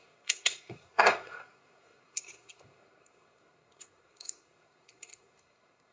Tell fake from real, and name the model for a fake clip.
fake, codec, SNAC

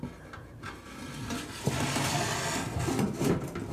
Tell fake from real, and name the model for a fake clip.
real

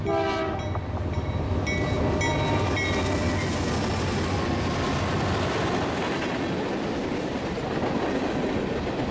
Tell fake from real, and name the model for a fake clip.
real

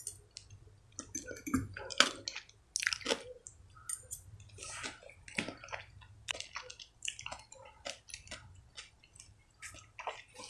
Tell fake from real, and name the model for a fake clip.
real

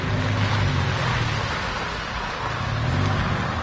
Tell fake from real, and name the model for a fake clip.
real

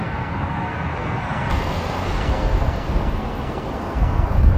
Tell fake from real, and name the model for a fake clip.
fake, codec, SNAC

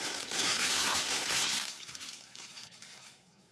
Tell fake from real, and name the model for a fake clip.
fake, codec, SNAC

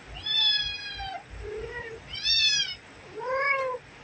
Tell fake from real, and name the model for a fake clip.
real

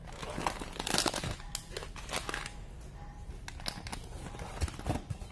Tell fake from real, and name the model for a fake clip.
real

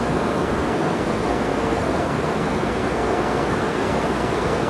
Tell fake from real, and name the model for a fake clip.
fake, codec, SNAC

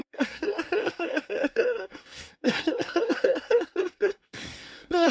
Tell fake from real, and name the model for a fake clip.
fake, codec, SNAC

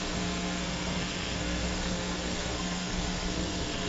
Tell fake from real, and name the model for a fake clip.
fake, codec, SNAC